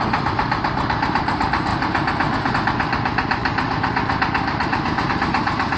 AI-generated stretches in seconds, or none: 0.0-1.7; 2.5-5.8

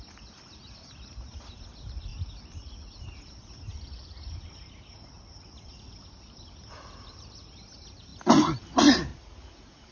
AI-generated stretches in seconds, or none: 9.1-9.9

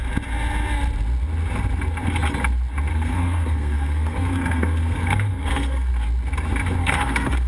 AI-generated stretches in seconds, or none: 2.9-5.9; 6.8-7.5

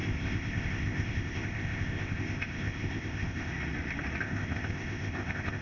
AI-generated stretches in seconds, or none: 0.0-3.5; 4.2-5.6

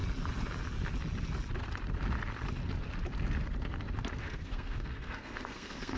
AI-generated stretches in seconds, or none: 4.2-6.0